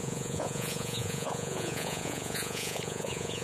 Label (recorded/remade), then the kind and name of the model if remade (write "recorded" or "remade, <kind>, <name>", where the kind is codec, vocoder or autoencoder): remade, vocoder, Vocos